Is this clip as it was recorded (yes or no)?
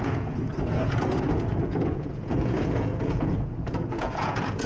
no